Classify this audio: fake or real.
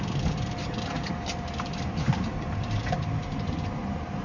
fake